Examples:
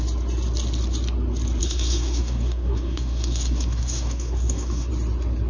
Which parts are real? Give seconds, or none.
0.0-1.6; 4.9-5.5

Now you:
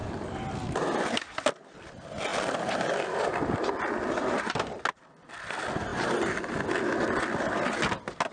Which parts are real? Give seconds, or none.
0.0-8.3

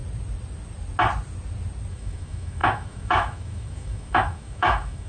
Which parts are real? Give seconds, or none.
0.0-1.9

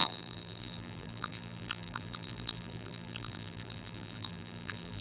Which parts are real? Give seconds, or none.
none

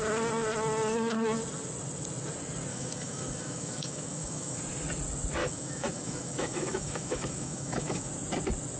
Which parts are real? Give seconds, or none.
0.0-2.7; 4.6-5.4; 8.1-8.8

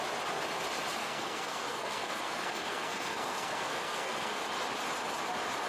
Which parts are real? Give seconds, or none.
0.0-1.0; 4.4-5.7

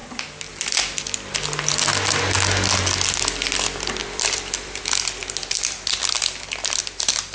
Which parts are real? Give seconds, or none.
0.0-4.0; 4.8-7.3